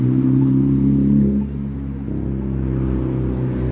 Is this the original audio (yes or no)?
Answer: yes